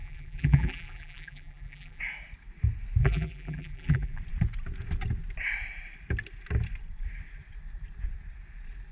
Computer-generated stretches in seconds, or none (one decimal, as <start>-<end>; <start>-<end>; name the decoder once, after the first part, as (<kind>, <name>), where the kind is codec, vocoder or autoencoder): 0.0-2.0 (vocoder, BigVGAN v2); 3.0-4.2